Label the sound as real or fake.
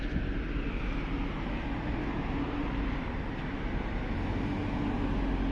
real